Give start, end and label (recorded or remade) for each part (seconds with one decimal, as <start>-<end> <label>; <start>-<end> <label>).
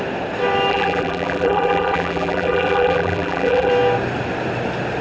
0.0-0.7 recorded; 0.7-3.7 remade; 3.7-5.0 recorded